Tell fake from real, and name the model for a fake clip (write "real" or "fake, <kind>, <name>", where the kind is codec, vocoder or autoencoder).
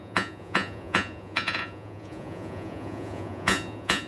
fake, vocoder, Vocos